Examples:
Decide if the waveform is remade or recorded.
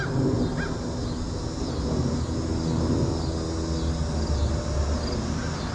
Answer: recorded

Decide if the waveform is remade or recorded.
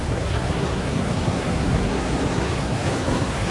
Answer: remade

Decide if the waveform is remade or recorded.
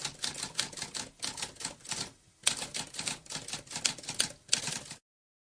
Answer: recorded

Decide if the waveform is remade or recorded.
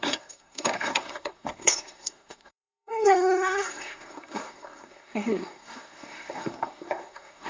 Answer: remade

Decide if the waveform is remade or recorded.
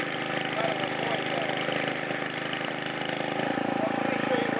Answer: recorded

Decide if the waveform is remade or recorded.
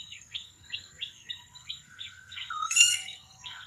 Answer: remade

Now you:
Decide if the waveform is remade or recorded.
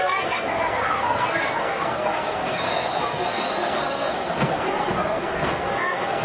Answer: remade